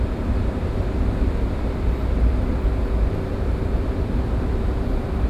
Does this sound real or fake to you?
fake